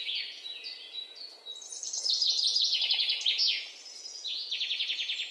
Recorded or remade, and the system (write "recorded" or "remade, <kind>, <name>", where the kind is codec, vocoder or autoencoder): remade, vocoder, Vocos